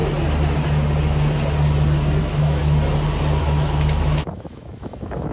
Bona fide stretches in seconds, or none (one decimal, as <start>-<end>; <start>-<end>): 0.0-2.2; 2.6-3.4